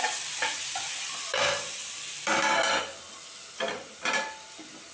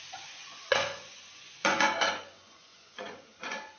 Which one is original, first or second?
first